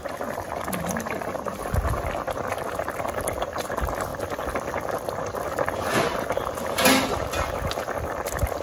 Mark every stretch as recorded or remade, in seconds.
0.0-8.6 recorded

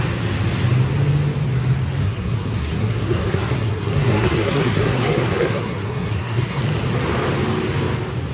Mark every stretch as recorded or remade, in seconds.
0.0-2.0 recorded; 2.0-6.6 remade; 6.6-8.3 recorded